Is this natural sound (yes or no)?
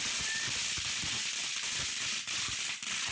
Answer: yes